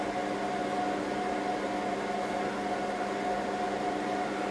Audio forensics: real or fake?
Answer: real